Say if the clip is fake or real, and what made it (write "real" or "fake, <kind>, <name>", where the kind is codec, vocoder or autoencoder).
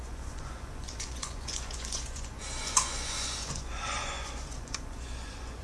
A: fake, vocoder, Vocos